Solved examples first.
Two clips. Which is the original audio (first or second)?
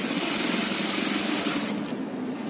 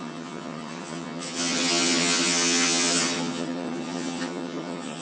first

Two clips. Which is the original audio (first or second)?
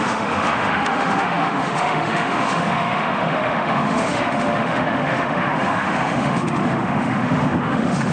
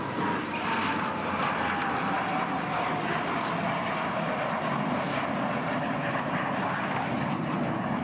second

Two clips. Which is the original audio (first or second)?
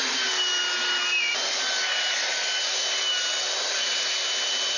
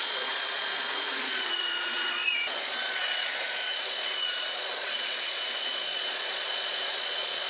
first